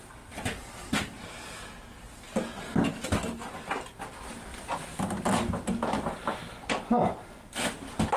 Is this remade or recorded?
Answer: recorded